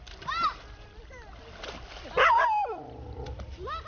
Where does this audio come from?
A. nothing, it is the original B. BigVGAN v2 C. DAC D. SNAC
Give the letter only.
B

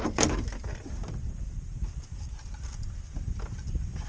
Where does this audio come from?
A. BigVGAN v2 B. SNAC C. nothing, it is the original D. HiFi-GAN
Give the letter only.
C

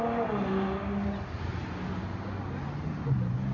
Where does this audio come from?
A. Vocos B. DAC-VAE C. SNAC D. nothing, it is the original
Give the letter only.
D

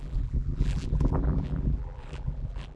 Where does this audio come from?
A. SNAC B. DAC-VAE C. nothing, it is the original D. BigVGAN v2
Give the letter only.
D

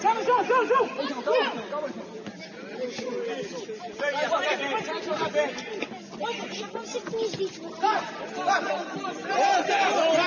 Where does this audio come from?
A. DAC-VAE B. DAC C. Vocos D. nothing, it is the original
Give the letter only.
D